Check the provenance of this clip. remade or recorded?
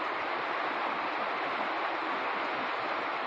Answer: recorded